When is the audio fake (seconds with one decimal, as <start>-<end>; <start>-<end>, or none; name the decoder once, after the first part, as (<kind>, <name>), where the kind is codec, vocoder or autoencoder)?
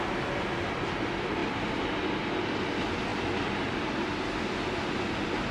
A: 1.4-1.9 (vocoder, BigVGAN v2)